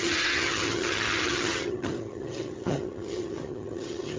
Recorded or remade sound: remade